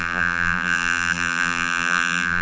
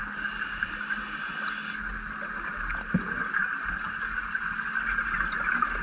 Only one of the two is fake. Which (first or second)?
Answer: first